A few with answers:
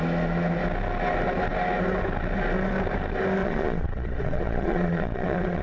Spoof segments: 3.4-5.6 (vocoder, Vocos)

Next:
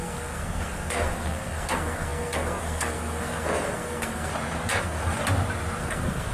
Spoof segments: 0.0-4.3 (codec, SNAC); 4.8-5.2; 5.8-6.3

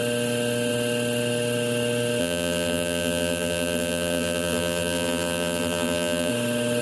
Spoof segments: 2.2-6.3 (vocoder, BigVGAN v2)

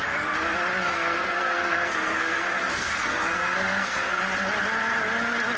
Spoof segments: 0.8-4.2 (codec, SNAC)

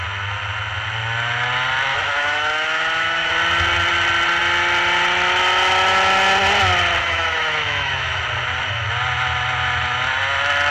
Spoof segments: 1.9-3.3 (autoencoder, DAC-VAE); 7.0-8.2